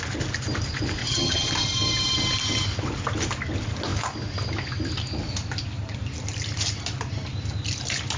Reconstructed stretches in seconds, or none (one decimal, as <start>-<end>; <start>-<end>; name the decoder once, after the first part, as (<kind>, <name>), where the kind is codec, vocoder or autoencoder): 1.0-1.5 (vocoder, HiFi-GAN)